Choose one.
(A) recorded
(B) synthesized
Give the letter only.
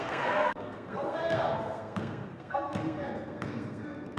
B